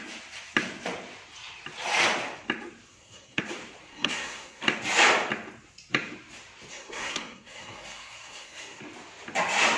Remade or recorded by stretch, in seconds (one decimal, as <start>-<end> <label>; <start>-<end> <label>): 0.0-2.9 recorded; 2.9-3.4 remade; 3.4-3.9 recorded; 3.9-4.6 remade; 4.6-6.7 recorded; 6.7-8.8 remade; 8.8-9.8 recorded